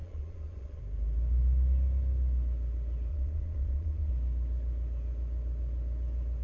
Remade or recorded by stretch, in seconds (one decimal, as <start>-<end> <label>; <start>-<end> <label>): 0.0-0.8 remade; 0.8-3.1 recorded; 3.1-4.1 remade; 4.1-6.4 recorded